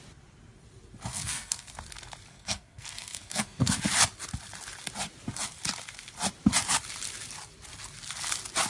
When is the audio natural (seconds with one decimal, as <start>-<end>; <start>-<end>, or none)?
0.0-1.1; 1.7-2.3; 3.8-8.7